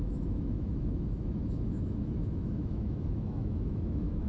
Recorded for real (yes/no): no